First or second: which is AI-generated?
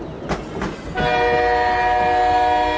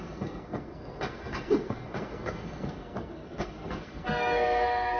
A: second